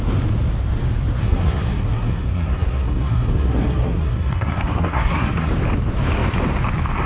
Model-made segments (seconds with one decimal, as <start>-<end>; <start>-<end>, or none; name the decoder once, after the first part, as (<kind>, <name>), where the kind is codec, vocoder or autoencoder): 1.2-5.5 (codec, SNAC)